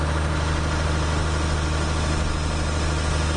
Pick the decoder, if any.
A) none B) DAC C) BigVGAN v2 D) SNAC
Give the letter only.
A